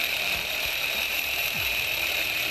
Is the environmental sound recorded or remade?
remade